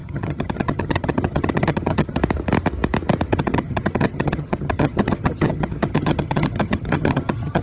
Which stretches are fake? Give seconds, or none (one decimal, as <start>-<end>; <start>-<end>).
0.0-2.2; 3.3-7.6